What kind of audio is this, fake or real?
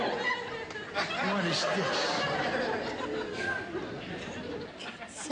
real